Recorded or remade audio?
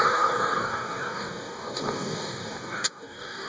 remade